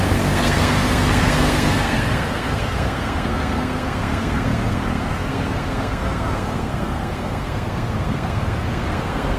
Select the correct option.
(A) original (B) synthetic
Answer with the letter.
B